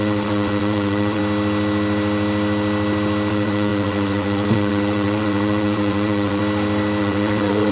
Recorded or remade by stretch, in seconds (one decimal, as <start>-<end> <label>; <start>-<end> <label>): 0.0-1.2 remade; 1.2-3.3 recorded; 3.3-6.4 remade; 6.4-7.0 recorded; 7.0-7.7 remade